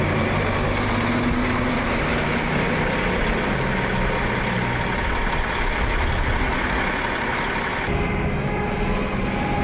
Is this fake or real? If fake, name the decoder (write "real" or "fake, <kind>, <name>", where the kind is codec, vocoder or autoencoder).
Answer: real